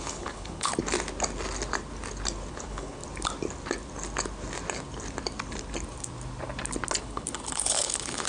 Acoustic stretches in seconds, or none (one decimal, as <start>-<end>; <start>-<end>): 0.7-2.5; 3.0-7.0